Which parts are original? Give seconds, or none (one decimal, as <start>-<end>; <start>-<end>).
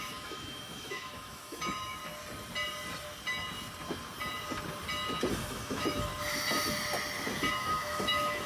2.0-5.3; 6.1-7.5